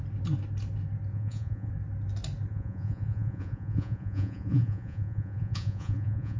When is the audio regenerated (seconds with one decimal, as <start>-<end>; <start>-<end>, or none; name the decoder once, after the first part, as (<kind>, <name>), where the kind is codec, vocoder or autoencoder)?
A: 1.1-1.7 (vocoder, Vocos); 2.5-6.4